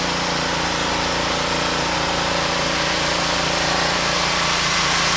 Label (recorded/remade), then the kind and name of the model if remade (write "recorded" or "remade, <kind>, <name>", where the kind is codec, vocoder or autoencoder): recorded